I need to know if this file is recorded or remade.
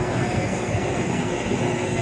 remade